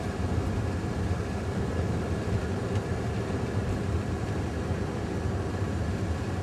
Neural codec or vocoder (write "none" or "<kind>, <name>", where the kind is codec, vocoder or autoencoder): vocoder, BigVGAN v2